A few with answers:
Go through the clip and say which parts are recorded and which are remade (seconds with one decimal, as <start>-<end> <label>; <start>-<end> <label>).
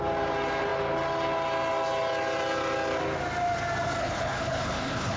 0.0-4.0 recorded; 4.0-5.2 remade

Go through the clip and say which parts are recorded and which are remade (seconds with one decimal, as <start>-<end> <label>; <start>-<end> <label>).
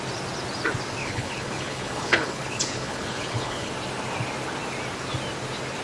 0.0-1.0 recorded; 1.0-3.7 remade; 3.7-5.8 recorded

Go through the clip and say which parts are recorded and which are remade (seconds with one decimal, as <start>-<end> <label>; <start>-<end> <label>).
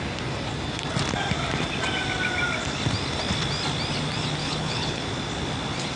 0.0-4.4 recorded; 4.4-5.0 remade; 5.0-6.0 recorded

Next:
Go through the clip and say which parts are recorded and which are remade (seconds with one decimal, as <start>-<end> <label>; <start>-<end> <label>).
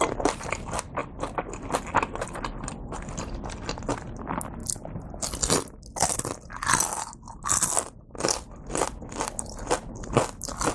0.0-10.7 recorded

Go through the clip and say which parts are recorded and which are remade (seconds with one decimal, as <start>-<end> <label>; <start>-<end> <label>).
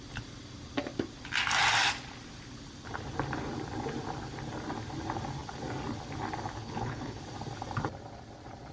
0.0-6.6 recorded; 6.6-7.2 remade; 7.2-8.7 recorded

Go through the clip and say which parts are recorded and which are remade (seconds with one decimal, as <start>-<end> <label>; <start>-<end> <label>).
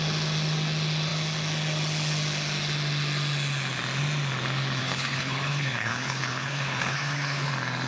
0.0-4.8 recorded; 4.8-7.5 remade; 7.5-7.9 recorded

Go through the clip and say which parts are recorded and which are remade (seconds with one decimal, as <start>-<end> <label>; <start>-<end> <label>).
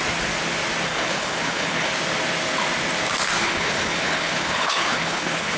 0.0-0.9 recorded; 0.9-1.9 remade; 1.9-3.4 recorded; 3.4-5.6 remade